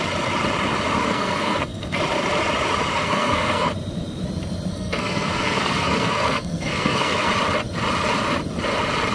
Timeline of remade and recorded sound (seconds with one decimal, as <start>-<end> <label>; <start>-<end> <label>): 0.0-1.0 recorded; 1.0-2.0 remade; 2.0-2.9 recorded; 2.9-3.7 remade; 3.7-4.7 recorded; 4.7-7.3 remade; 7.3-9.1 recorded